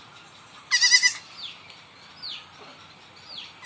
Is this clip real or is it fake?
real